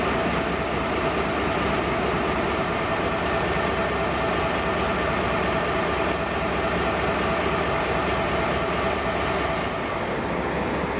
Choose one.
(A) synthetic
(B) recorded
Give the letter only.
B